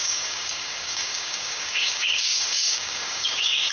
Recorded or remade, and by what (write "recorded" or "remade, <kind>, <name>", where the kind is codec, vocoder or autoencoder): remade, codec, DAC